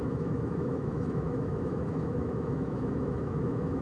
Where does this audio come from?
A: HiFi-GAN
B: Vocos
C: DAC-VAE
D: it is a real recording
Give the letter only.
C